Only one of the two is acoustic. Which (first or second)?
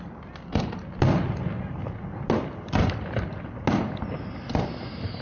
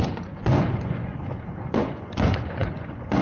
first